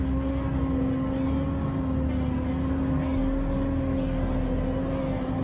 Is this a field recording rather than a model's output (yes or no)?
yes